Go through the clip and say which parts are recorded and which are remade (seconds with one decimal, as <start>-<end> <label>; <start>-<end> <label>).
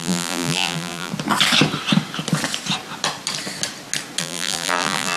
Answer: 0.0-1.1 remade; 1.1-4.2 recorded; 4.2-5.2 remade